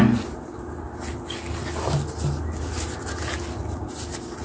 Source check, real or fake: real